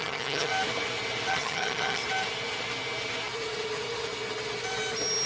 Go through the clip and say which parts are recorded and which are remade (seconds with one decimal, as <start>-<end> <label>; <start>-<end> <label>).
0.0-0.5 remade; 0.5-1.3 recorded; 1.3-2.0 remade; 2.0-5.3 recorded